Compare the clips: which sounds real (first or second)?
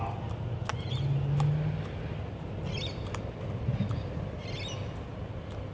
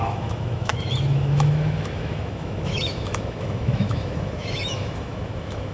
first